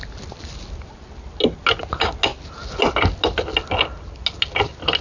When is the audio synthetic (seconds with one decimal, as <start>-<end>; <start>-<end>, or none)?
none